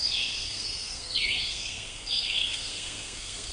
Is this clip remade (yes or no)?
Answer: yes